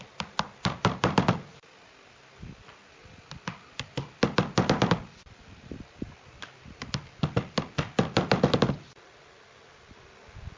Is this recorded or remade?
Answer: recorded